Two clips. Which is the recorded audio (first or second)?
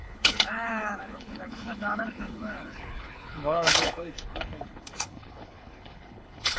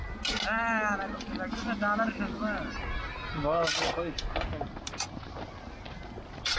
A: second